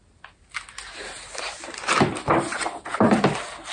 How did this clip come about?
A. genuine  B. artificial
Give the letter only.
A